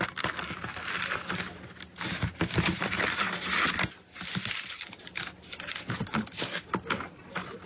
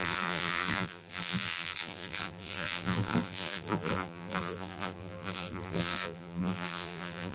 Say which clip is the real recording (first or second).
first